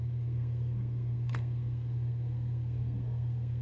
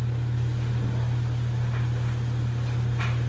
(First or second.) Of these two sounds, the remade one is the first